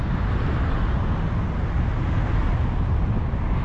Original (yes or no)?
yes